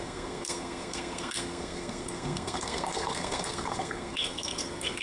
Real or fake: fake